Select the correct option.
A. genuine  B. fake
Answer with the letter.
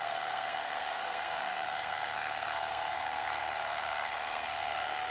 B